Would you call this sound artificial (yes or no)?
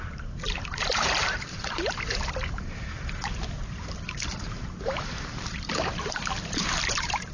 yes